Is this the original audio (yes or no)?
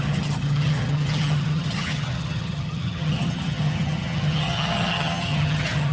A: no